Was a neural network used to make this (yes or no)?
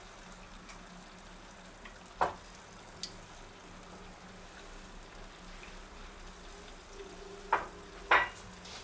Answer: no